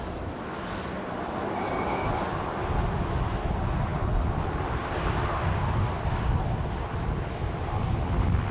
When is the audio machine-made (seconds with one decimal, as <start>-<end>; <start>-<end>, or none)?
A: none